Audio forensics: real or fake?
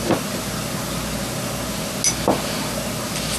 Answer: real